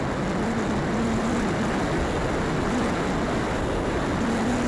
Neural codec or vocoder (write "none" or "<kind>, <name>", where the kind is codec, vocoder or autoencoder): none